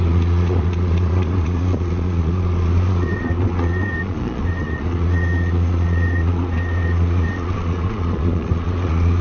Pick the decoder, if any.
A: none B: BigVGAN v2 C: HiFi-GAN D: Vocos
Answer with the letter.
D